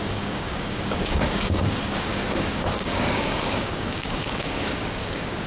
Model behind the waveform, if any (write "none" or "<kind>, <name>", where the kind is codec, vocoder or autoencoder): codec, DAC